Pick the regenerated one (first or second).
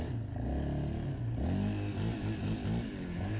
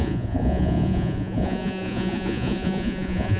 second